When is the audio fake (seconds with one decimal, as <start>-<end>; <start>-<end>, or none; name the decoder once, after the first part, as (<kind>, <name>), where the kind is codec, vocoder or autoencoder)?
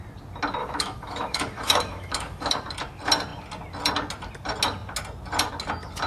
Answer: 0.6-2.5 (autoencoder, DAC-VAE)